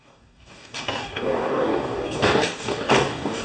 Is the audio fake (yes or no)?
yes